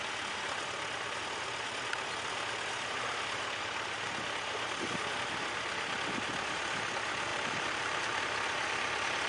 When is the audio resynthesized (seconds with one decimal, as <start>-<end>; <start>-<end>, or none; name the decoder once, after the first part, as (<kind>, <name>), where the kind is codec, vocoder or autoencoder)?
7.3-8.2 (vocoder, BigVGAN v2)

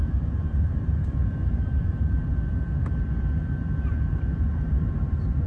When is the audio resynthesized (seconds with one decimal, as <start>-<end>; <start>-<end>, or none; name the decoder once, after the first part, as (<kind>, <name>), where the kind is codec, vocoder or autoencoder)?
0.0-2.3 (vocoder, BigVGAN v2); 4.1-5.5

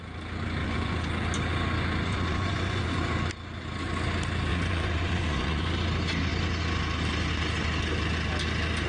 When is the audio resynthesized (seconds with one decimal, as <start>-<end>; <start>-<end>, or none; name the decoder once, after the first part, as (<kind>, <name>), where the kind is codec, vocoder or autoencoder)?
0.6-1.1 (vocoder, Vocos); 2.1-3.0; 4.5-5.6

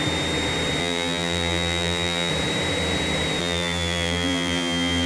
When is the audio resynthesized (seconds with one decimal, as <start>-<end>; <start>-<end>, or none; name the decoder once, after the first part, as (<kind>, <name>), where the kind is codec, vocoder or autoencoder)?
0.8-2.3 (vocoder, BigVGAN v2); 3.4-5.1

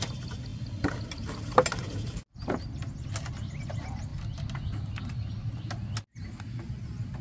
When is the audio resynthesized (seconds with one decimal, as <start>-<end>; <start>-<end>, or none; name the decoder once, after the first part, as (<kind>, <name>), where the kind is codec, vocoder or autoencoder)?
none

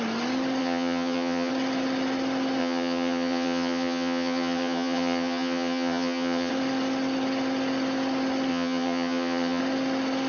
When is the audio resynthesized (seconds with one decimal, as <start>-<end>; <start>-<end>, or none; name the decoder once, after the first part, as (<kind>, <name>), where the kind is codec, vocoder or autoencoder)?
0.6-1.5 (vocoder, HiFi-GAN); 2.6-6.5; 8.5-9.6

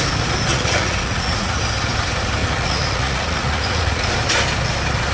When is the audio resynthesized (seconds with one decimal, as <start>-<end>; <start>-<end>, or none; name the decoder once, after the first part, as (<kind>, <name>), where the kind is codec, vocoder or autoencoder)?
0.5-1.6 (vocoder, Vocos); 2.4-4.1